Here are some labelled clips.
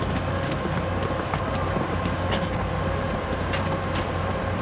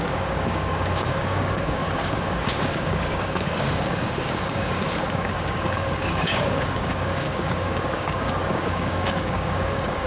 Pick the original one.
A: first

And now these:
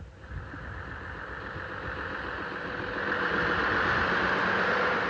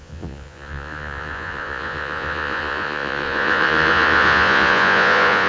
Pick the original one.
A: first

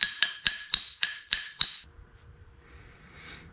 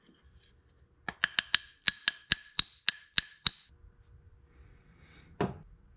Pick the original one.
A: second